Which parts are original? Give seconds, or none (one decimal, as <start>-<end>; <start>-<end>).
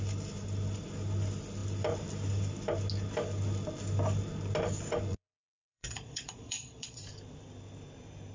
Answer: 0.0-5.1; 7.0-8.3